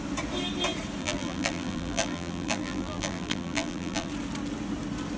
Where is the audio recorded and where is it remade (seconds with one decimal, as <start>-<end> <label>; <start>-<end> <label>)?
0.0-1.0 recorded; 1.0-4.1 remade; 4.1-5.2 recorded